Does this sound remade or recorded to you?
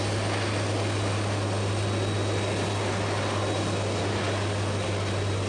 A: recorded